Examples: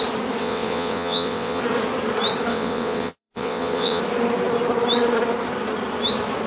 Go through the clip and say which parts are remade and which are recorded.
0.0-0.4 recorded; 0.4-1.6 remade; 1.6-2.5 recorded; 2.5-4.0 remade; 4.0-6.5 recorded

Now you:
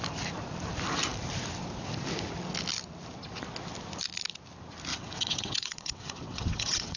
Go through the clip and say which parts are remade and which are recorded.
0.0-4.9 recorded; 4.9-7.0 remade

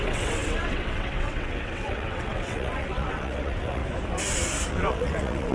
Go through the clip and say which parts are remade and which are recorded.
0.0-3.8 remade; 3.8-4.7 recorded; 4.7-5.5 remade

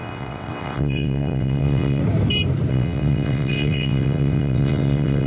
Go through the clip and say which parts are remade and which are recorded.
0.0-2.0 remade; 2.0-2.7 recorded; 2.7-5.3 remade

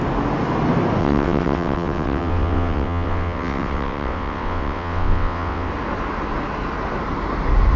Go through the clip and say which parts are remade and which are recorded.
0.0-1.0 recorded; 1.0-5.7 remade; 5.7-7.8 recorded

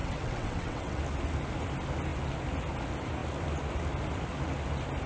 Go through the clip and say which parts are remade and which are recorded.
0.0-1.0 remade; 1.0-5.1 recorded

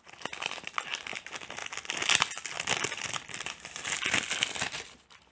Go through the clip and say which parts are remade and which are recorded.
0.0-5.3 recorded